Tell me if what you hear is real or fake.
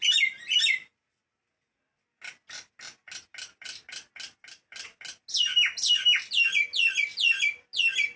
real